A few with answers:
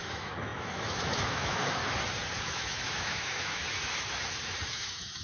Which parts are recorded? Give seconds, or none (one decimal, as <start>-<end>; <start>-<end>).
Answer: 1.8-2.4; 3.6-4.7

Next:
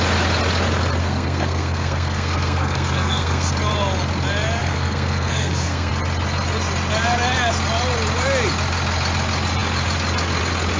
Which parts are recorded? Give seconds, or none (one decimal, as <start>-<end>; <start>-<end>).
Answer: 0.0-1.0; 3.5-4.6; 5.9-10.8

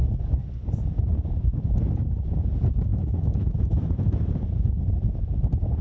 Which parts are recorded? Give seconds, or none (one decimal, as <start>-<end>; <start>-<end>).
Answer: 0.0-2.9; 4.1-5.8